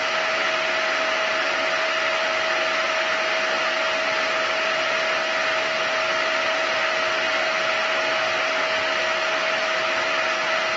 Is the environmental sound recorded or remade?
recorded